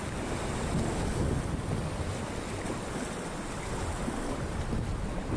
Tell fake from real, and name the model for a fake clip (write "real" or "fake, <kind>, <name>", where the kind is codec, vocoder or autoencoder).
real